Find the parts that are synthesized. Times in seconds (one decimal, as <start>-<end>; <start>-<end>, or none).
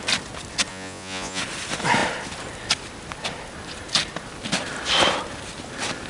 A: 0.7-1.4